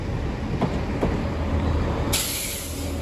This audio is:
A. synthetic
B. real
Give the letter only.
B